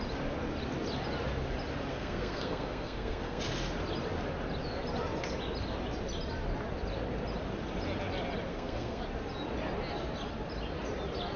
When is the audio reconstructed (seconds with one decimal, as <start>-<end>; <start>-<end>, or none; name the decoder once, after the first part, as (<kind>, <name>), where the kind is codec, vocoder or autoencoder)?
1.9-3.4 (codec, SNAC); 8.5-9.0